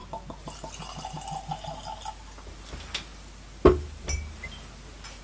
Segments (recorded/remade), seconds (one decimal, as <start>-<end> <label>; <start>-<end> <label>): 0.0-5.2 recorded